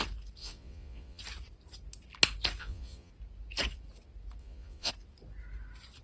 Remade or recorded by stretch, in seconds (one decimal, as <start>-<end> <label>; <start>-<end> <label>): 0.0-0.4 recorded; 0.4-1.2 remade; 1.2-2.6 recorded; 2.6-3.1 remade; 3.1-4.4 recorded; 4.4-4.9 remade; 4.9-6.0 recorded